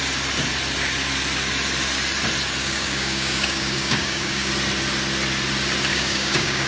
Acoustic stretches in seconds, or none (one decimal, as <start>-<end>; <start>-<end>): 0.0-2.6; 4.5-5.9